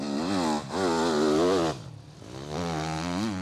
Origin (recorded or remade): recorded